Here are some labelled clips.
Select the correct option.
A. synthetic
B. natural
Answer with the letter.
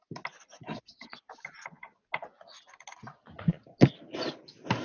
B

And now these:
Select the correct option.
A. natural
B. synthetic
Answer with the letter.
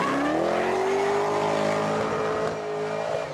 A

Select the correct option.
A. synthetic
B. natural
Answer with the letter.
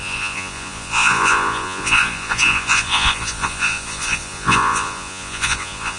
A